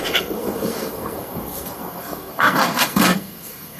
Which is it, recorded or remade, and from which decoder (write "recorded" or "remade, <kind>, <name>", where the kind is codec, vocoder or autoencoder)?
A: remade, codec, SNAC